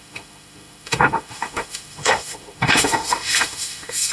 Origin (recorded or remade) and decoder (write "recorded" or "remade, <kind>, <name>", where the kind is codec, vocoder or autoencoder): remade, autoencoder, DAC-VAE